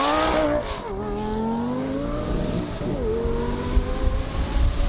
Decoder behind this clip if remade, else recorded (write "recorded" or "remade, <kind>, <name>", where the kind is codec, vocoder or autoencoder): recorded